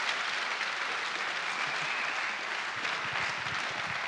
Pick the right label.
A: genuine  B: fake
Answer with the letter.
A